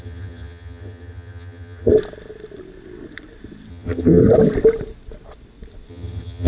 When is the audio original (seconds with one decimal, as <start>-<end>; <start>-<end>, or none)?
1.9-3.7; 4.2-5.9